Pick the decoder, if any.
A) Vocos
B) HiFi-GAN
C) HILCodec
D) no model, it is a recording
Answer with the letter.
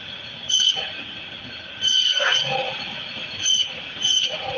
A